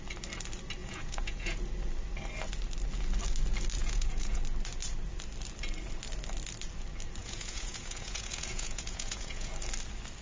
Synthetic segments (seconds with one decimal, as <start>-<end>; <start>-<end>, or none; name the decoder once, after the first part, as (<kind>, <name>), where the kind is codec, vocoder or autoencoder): 0.8-1.6 (vocoder, Vocos); 3.8-4.4; 7.2-9.5